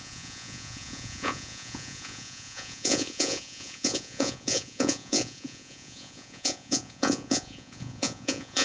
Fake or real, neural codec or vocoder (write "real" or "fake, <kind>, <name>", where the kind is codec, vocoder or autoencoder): fake, vocoder, Vocos